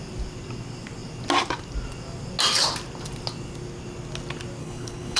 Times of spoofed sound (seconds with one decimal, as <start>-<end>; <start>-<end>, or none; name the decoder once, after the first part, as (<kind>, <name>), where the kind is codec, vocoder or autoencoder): 4.6-5.2 (codec, HILCodec)